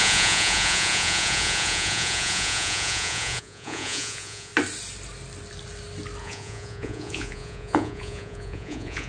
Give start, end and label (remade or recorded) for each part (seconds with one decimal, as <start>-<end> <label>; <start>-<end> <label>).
0.0-4.5 remade; 4.5-6.2 recorded; 6.2-9.1 remade